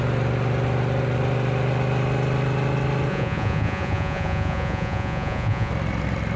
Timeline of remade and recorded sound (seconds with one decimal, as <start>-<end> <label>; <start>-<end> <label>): 0.0-3.1 recorded; 3.1-5.7 remade; 5.7-6.4 recorded